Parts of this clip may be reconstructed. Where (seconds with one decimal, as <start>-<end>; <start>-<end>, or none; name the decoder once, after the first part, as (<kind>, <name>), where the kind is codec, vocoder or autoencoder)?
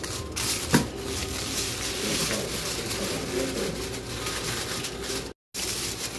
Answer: 1.2-1.7 (codec, DAC)